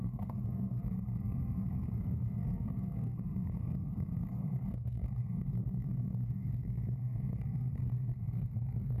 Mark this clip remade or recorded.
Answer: remade